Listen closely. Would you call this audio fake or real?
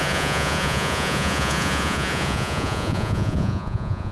fake